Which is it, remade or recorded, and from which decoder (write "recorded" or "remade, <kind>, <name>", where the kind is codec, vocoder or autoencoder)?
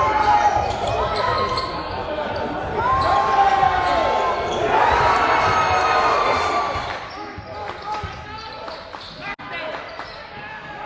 recorded